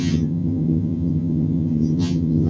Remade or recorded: remade